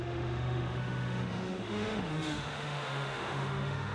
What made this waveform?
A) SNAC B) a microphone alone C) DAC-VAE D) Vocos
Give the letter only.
C